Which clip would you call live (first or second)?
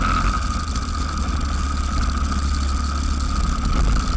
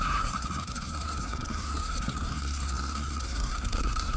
first